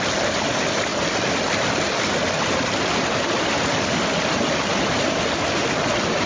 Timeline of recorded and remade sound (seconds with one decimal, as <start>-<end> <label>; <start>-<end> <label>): 0.0-6.3 recorded